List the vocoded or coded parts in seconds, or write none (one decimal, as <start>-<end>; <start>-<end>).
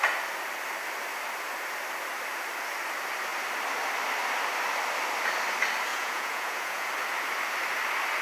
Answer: 5.9-6.9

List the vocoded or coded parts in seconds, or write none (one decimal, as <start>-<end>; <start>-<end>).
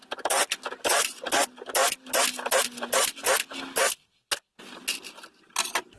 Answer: none